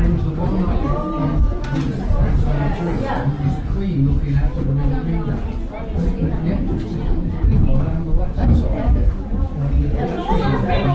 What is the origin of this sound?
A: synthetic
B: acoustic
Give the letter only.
B